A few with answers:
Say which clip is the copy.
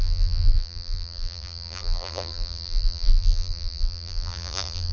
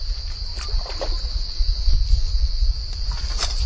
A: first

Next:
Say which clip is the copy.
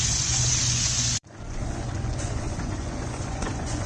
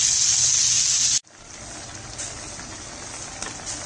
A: first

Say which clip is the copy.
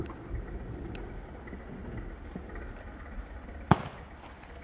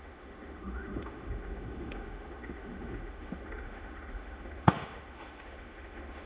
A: second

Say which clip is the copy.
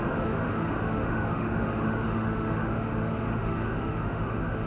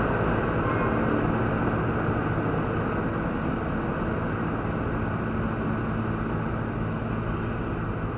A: first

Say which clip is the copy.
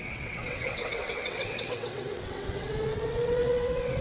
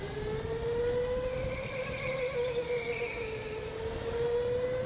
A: first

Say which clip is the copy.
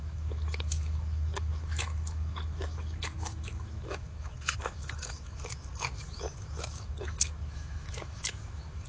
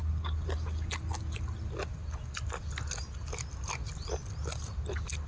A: first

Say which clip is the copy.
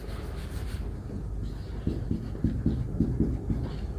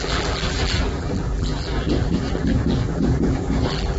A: second